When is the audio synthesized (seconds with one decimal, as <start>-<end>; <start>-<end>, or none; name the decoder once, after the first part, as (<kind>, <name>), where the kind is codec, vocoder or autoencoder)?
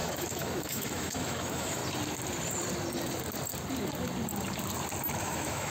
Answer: 0.0-1.8 (autoencoder, DAC-VAE); 5.2-5.7